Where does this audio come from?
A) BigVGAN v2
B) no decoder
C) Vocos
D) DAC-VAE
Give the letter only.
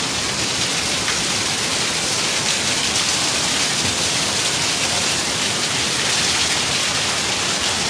B